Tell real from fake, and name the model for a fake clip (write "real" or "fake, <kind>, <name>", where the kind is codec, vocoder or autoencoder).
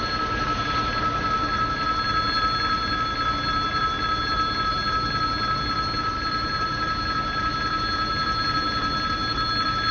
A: real